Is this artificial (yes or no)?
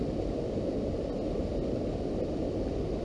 no